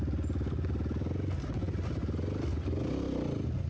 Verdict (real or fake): real